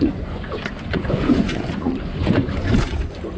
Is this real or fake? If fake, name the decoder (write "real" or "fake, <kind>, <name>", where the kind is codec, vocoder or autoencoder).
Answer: fake, vocoder, Vocos